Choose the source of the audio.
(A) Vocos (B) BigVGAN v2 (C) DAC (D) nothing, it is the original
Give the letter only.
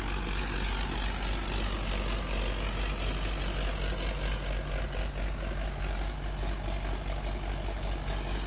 D